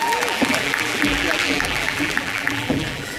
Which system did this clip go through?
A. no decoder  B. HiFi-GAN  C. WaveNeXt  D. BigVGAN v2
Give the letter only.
D